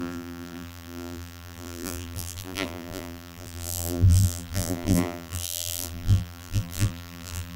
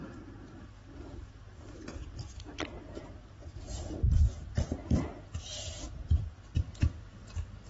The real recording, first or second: second